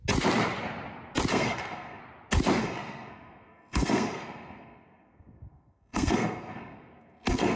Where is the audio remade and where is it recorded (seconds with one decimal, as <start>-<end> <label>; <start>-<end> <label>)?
0.0-1.3 recorded; 1.3-2.0 remade; 2.0-2.6 recorded; 2.6-7.6 remade